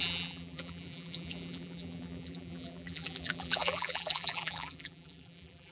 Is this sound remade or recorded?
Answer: remade